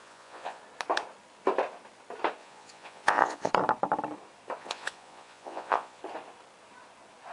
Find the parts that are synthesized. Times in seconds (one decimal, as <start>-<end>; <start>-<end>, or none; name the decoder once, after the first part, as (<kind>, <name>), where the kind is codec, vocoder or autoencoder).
0.0-0.6 (vocoder, Vocos); 2.4-3.5; 4.6-6.0